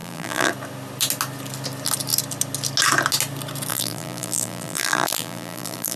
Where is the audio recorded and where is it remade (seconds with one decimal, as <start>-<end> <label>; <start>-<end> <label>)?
0.0-0.5 remade; 0.5-3.7 recorded; 3.7-6.0 remade